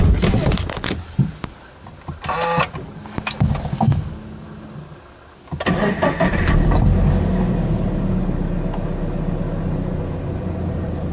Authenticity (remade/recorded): recorded